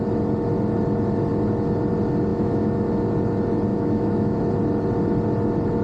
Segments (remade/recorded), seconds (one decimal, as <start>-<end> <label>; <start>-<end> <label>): 0.0-2.3 recorded; 2.3-2.9 remade; 2.9-3.7 recorded; 3.7-4.4 remade; 4.4-5.8 recorded

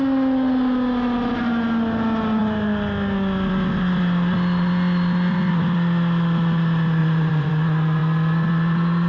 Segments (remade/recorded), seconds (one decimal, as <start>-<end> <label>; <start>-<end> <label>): 0.0-7.0 recorded; 7.0-7.5 remade; 7.5-9.1 recorded